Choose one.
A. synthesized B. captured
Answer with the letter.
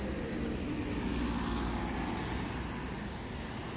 B